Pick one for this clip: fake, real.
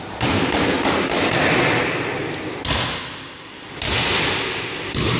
real